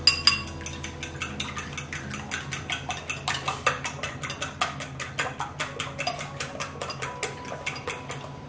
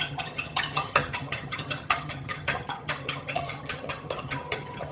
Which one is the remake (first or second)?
second